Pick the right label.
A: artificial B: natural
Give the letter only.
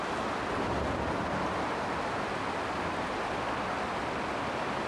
B